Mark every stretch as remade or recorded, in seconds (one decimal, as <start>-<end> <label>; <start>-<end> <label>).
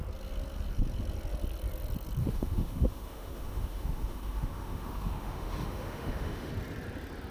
0.0-2.2 recorded; 2.2-6.5 remade; 6.5-7.3 recorded